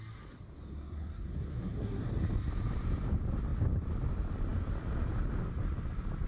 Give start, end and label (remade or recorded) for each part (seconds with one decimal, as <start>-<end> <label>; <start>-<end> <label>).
0.0-0.7 recorded; 0.7-2.0 remade; 2.0-6.3 recorded